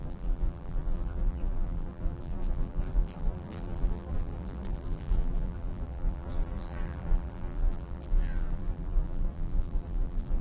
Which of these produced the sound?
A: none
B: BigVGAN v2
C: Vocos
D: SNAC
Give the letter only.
B